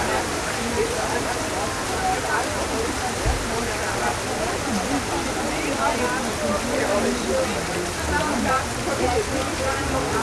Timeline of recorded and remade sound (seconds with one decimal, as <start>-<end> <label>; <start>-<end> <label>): 0.0-10.2 recorded